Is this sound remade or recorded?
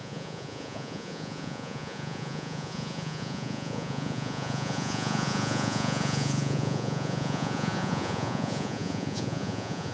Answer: remade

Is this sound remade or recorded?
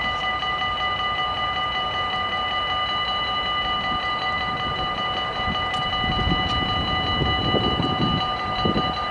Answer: recorded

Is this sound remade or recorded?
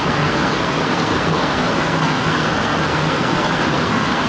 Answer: remade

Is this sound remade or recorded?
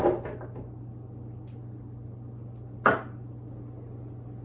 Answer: recorded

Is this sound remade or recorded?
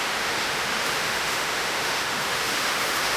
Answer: remade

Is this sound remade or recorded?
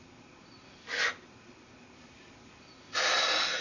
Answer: recorded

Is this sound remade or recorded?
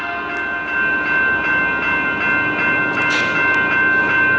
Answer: recorded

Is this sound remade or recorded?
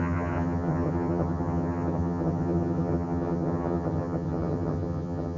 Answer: remade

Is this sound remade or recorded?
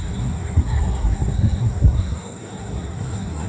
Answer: remade